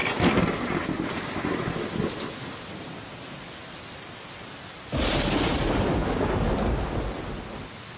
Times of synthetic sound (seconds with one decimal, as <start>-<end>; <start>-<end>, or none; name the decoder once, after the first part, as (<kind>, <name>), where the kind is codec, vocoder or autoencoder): none